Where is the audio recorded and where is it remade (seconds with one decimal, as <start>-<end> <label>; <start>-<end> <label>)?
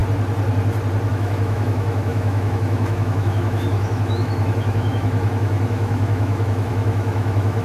0.0-1.1 recorded; 1.1-7.6 remade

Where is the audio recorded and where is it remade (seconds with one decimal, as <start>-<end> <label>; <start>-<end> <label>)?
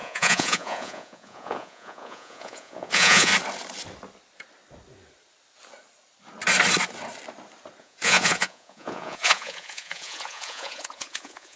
0.0-3.3 remade; 3.3-7.8 recorded; 7.8-11.6 remade